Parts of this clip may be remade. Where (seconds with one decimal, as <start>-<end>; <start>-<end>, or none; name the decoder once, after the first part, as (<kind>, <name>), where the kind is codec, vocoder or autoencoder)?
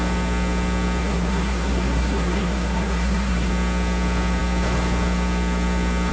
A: 1.0-3.5 (codec, SNAC)